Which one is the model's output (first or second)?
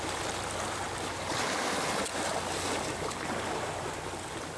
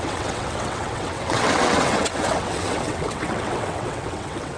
second